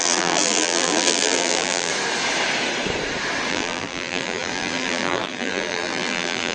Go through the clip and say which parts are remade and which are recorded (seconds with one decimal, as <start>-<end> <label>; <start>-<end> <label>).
0.0-1.9 remade; 1.9-3.5 recorded; 3.5-6.5 remade